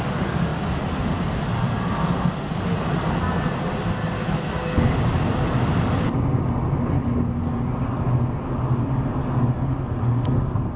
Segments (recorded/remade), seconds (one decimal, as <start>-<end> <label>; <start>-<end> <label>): 0.0-10.8 recorded